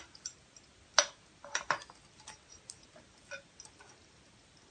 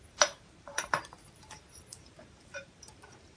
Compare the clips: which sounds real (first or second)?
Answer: first